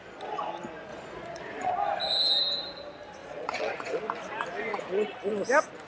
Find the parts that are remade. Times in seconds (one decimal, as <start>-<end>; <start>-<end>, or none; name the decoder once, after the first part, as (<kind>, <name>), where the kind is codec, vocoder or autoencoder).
0.9-1.7 (vocoder, Vocos); 3.2-4.0; 4.7-5.3